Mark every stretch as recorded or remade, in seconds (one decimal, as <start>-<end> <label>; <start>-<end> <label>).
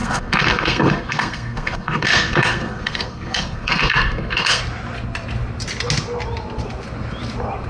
0.0-4.6 remade; 4.6-7.7 recorded